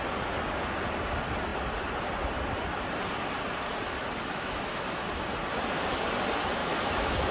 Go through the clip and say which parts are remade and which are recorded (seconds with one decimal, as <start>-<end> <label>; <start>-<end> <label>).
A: 0.0-4.3 recorded; 4.3-5.0 remade; 5.0-6.6 recorded; 6.6-7.3 remade